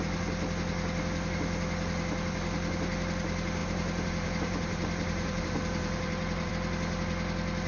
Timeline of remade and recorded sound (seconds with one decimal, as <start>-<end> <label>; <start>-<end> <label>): 0.0-3.6 recorded; 3.6-6.5 remade; 6.5-7.7 recorded